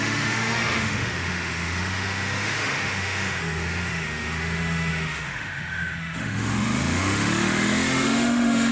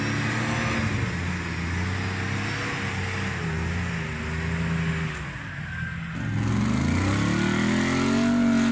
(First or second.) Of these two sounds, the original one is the second